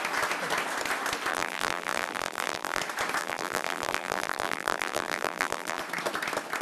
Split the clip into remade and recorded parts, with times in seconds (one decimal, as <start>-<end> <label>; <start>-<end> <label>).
0.0-1.3 recorded; 1.3-2.8 remade; 2.8-3.2 recorded; 3.2-5.8 remade; 5.8-6.6 recorded